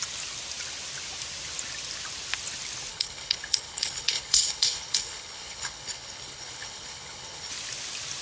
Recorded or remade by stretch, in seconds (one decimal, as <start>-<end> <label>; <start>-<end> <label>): 0.0-2.9 recorded; 2.9-7.5 remade; 7.5-8.2 recorded